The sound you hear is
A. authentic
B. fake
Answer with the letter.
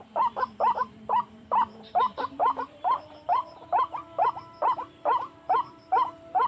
B